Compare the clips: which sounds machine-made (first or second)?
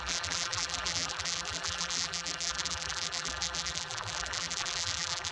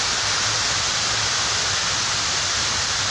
first